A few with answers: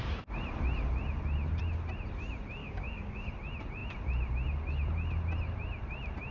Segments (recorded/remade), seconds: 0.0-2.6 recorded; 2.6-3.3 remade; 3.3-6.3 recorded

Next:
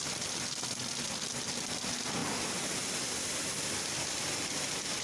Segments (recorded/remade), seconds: 0.0-5.0 recorded